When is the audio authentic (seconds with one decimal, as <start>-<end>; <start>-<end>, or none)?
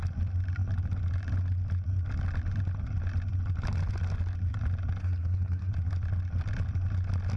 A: 0.0-5.0; 5.7-7.4